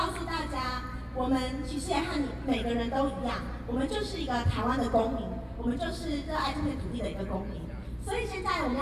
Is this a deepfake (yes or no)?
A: no